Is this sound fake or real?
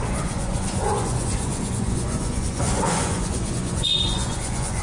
fake